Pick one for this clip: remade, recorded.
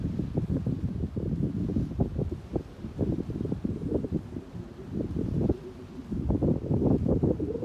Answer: recorded